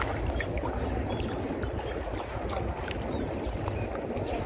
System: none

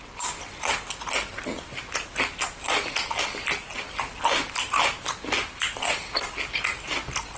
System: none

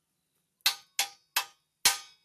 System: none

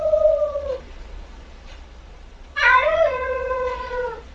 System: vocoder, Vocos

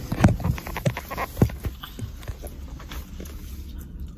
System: none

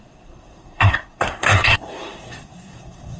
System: codec, SNAC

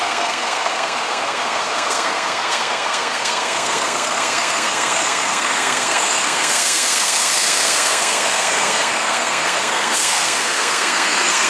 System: codec, SNAC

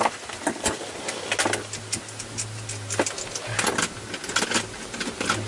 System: none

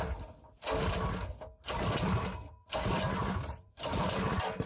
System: none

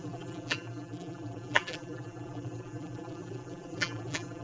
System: vocoder, BigVGAN v2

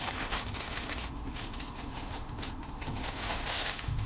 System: autoencoder, DAC-VAE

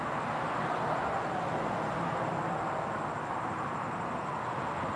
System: none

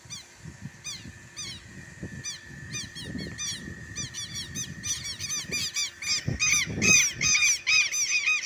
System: none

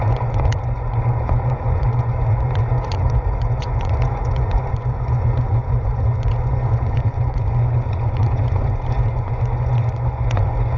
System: vocoder, Vocos